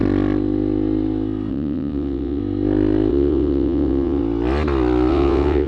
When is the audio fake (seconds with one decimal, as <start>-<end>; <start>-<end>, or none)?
1.5-2.4; 3.1-4.2; 5.1-5.7